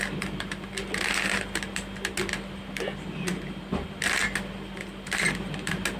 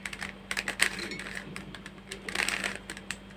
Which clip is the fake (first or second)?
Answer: second